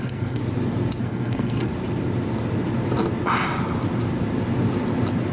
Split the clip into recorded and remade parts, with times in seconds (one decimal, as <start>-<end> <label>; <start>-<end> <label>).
0.0-0.4 remade; 0.4-1.0 recorded; 1.0-1.7 remade; 1.7-5.3 recorded